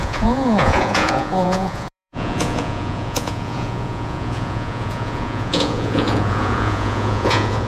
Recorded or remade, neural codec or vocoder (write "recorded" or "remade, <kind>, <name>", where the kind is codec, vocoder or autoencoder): remade, vocoder, Vocos